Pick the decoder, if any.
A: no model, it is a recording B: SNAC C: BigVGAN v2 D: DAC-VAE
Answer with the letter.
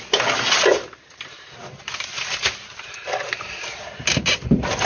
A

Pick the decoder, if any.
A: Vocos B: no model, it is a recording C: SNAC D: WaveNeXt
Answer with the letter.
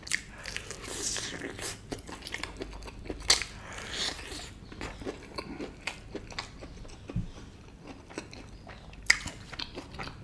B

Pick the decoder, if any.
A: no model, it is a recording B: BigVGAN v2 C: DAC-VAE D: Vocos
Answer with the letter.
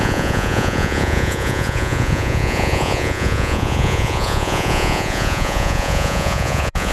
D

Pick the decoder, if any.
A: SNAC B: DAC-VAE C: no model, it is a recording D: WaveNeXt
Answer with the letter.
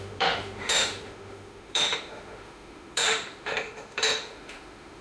B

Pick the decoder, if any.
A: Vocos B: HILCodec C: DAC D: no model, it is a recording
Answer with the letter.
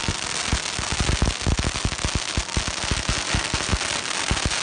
D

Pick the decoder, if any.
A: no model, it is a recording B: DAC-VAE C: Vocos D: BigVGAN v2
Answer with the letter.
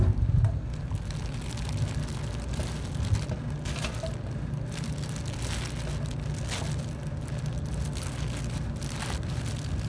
A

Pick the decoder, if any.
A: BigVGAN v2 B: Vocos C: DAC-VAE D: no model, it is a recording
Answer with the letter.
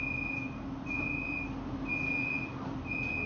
D